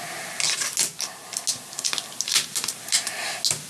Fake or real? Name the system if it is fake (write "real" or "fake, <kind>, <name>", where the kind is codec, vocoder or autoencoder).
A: real